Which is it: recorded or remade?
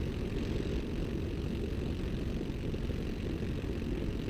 recorded